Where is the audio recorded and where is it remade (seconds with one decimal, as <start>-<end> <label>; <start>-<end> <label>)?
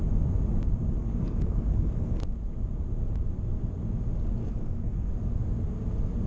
0.0-1.0 recorded; 1.0-2.3 remade; 2.3-4.4 recorded; 4.4-5.1 remade; 5.1-6.3 recorded